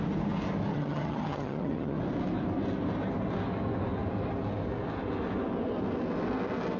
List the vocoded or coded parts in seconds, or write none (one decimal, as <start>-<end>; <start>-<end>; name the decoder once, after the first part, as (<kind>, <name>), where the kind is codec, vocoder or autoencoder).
0.7-2.0 (vocoder, HiFi-GAN)